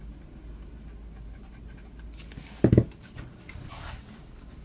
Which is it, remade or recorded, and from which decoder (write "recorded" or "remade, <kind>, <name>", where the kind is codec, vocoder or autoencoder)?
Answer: recorded